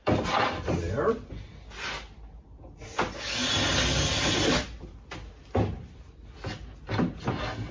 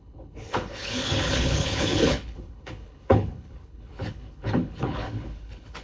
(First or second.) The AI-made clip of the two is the second